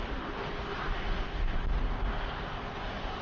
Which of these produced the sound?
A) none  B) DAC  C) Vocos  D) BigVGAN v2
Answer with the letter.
A